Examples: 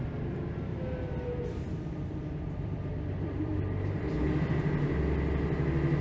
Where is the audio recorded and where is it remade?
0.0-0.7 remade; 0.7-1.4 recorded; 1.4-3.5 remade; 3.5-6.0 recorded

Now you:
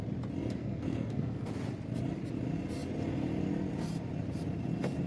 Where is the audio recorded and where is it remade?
0.0-0.6 recorded; 0.6-1.5 remade; 1.5-5.1 recorded